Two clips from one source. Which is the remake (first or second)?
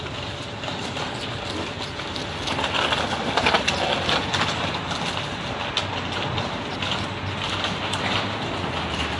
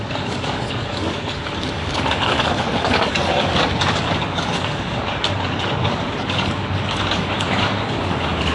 second